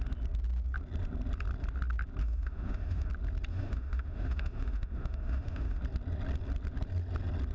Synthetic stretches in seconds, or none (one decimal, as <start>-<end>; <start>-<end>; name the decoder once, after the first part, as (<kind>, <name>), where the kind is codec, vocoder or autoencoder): 2.2-3.1 (autoencoder, DAC-VAE); 3.5-5.8